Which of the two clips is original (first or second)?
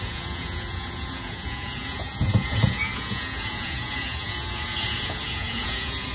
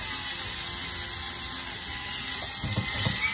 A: second